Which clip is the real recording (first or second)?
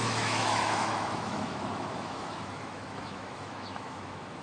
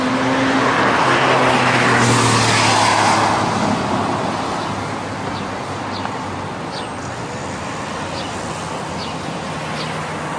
second